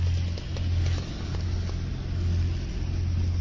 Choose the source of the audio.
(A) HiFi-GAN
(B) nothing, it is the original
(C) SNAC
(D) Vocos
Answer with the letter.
B